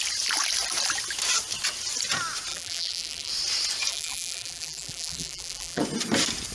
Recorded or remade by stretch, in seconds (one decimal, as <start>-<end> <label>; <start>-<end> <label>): 0.0-2.5 recorded; 2.5-3.3 remade; 3.3-3.9 recorded; 3.9-5.8 remade; 5.8-6.5 recorded